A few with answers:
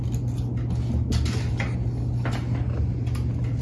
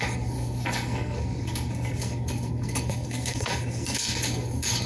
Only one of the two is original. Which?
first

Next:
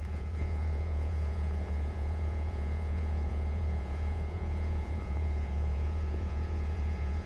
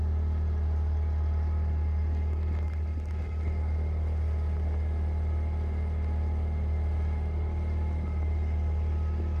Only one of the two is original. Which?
second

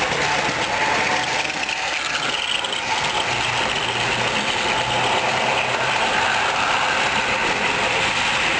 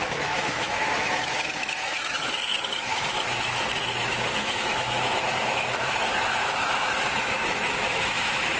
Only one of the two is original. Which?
first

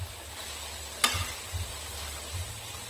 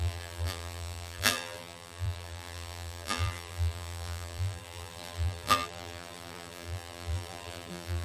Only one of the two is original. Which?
first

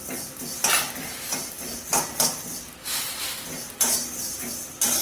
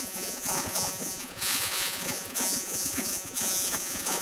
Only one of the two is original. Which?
first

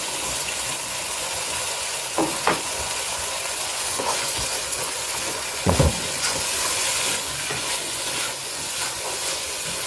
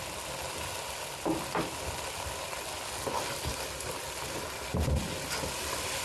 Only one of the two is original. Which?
second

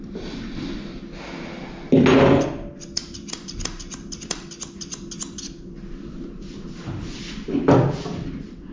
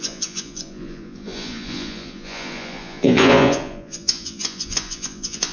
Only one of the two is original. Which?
first